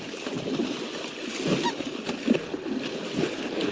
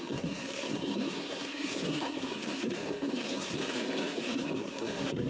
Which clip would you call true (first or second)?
first